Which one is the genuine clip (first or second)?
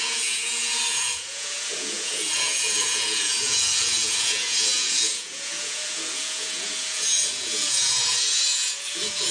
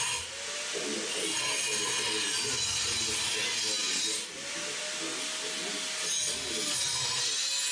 second